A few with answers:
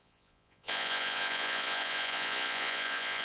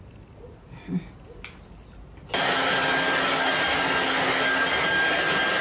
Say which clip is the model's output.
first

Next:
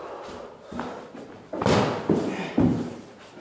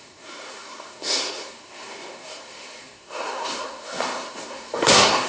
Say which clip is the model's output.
second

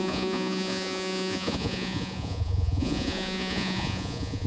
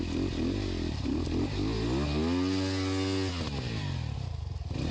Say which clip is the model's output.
first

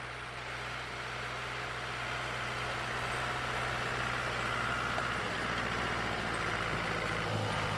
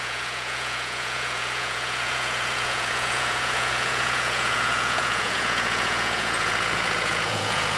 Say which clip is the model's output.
second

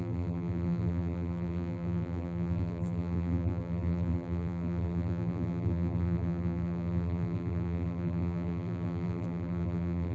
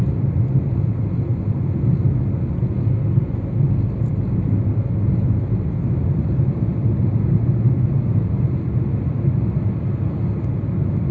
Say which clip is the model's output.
first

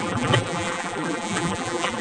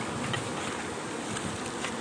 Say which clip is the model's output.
first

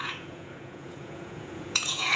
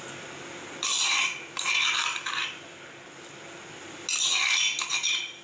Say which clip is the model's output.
first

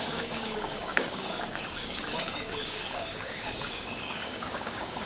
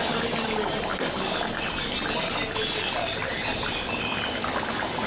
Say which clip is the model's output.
first